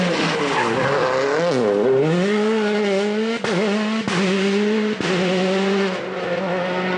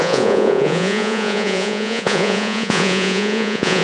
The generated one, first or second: second